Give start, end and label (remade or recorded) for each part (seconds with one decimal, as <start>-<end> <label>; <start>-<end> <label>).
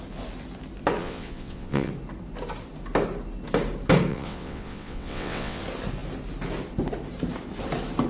0.0-1.0 recorded; 1.0-1.9 remade; 1.9-4.1 recorded; 4.1-5.6 remade; 5.6-8.1 recorded